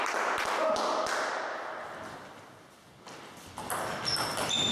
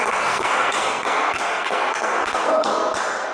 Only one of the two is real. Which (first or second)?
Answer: first